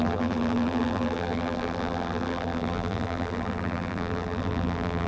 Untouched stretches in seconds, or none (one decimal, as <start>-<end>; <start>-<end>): none